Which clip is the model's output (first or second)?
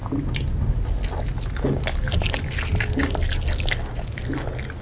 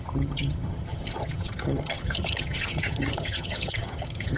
second